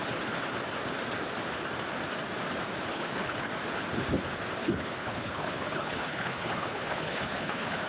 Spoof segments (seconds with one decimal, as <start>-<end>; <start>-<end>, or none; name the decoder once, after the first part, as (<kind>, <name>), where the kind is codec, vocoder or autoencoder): 2.9-3.5 (codec, HILCodec); 4.6-7.9